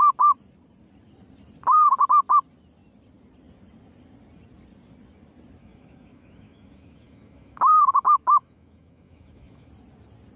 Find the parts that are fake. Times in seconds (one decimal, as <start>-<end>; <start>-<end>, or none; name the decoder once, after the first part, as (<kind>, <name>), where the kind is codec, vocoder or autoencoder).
5.6-9.7 (autoencoder, DAC-VAE)